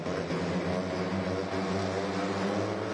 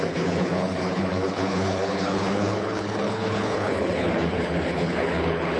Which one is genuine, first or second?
first